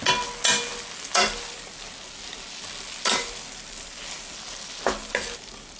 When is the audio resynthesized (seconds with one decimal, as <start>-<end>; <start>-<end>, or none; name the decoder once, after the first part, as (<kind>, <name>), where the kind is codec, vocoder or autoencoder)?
none